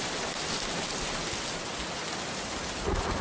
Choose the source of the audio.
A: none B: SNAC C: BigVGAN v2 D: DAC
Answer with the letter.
A